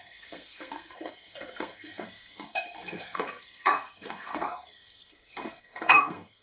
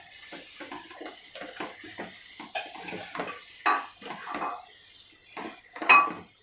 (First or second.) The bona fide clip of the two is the second